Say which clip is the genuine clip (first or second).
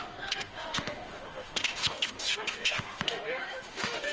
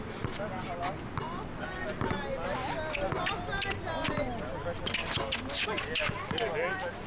second